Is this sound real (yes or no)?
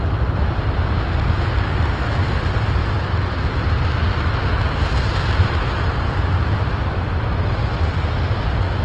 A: yes